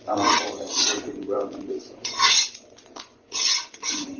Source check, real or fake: fake